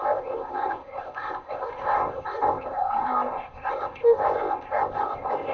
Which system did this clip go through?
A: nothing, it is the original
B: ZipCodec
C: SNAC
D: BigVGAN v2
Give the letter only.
B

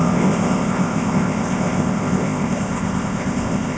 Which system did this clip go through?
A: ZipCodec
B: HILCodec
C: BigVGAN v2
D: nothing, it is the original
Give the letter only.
A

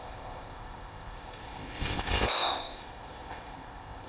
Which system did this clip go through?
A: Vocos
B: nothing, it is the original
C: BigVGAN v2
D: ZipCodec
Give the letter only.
D